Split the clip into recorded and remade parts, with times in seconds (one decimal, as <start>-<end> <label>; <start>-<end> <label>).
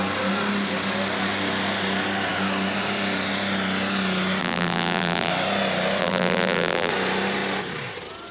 0.0-4.4 recorded; 4.4-5.3 remade; 5.3-6.0 recorded; 6.0-6.9 remade; 6.9-8.3 recorded